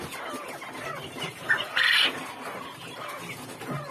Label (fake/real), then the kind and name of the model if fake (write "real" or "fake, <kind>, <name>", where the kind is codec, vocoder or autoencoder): real